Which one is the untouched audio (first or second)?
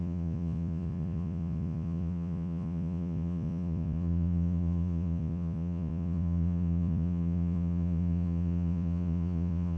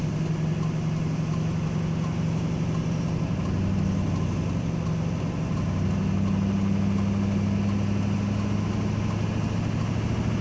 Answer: second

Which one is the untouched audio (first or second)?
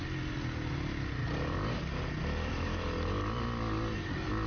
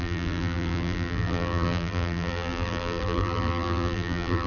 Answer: first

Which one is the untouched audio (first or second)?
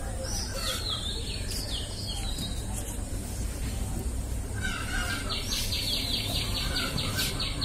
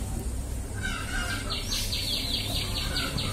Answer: second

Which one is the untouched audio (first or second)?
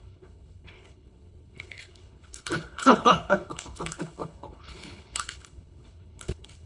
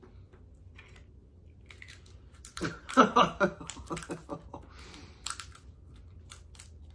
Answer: second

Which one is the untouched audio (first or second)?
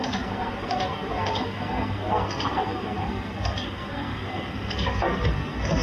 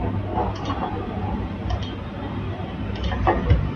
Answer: second